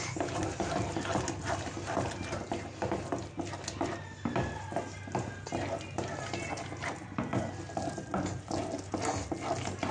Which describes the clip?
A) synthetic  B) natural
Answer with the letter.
B